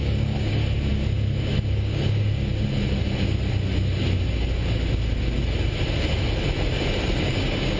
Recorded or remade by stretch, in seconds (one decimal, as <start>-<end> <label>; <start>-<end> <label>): 0.0-0.6 remade; 0.6-1.7 recorded; 1.7-2.5 remade; 2.5-7.2 recorded; 7.2-7.8 remade